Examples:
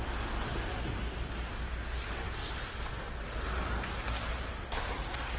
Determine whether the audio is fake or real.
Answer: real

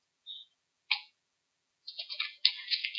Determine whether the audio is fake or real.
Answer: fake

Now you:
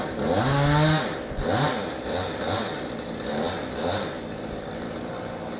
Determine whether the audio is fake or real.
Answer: real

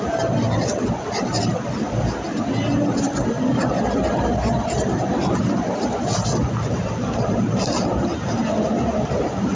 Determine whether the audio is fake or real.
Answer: real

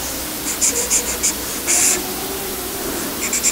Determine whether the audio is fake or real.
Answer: real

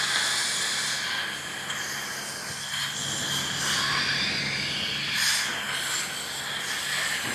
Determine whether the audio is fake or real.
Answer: real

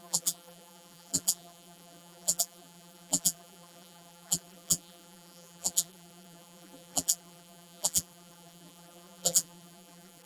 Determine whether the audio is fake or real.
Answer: fake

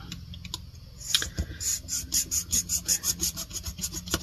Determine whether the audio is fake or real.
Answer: real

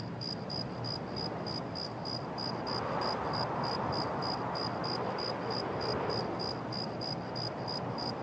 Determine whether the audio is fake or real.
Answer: real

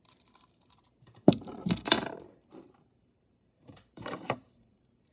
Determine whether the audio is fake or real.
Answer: fake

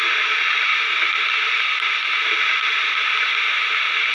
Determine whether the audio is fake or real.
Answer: real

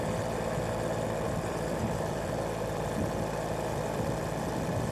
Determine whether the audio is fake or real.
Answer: real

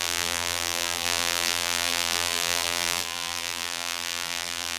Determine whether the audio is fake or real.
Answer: fake